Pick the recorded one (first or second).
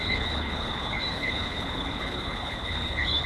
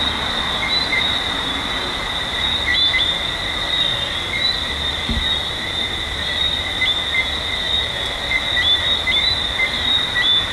second